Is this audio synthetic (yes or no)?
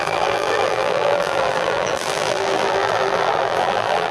yes